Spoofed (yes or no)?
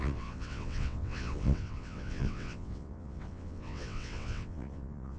yes